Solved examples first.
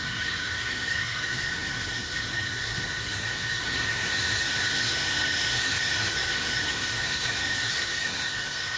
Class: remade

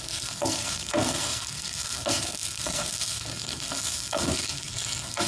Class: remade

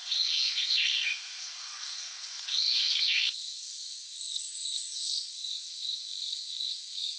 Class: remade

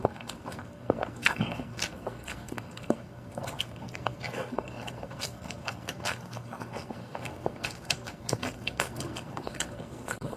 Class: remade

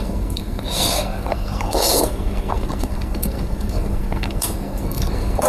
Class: remade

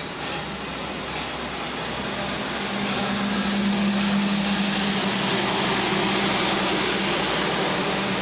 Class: recorded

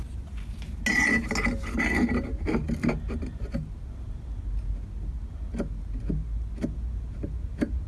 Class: recorded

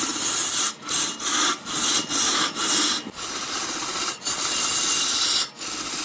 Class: recorded